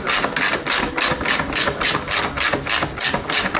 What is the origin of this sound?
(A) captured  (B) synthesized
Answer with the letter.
A